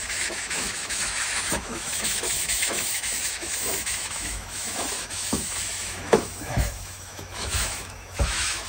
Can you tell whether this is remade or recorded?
remade